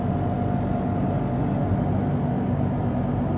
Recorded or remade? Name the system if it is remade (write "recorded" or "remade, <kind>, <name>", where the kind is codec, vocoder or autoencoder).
recorded